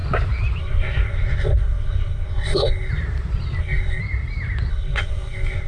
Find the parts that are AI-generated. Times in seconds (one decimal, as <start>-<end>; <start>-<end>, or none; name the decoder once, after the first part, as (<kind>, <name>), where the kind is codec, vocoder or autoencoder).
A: 0.6-2.9 (codec, SNAC); 3.6-4.0; 4.7-5.7